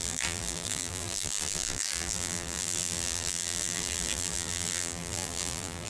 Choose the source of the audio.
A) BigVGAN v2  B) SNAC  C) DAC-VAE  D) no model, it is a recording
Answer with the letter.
A